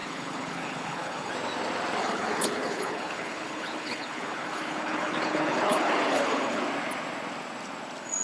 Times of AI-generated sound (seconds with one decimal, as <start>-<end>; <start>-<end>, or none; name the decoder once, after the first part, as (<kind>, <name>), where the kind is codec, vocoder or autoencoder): 0.0-1.3 (codec, HILCodec); 2.0-6.6